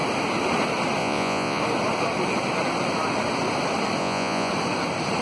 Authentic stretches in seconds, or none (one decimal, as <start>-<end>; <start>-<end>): 0.0-1.0; 1.6-4.0; 4.5-5.2